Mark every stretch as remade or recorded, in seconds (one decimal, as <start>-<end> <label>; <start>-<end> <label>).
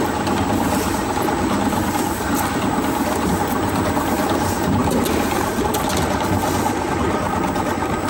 0.0-8.1 recorded